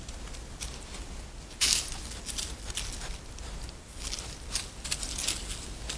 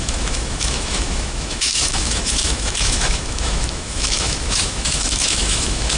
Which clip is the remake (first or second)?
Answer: second